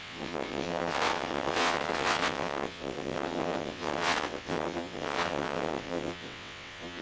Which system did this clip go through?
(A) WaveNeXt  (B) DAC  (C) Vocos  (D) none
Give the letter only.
A